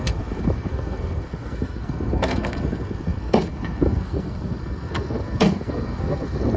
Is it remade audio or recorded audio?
remade